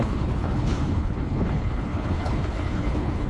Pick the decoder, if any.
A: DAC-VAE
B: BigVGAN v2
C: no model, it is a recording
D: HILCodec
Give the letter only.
D